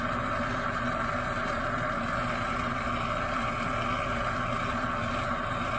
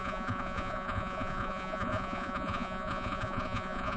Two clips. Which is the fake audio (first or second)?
second